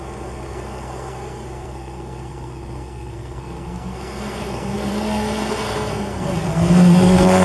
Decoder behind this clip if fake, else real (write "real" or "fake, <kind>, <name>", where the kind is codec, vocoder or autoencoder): fake, codec, SNAC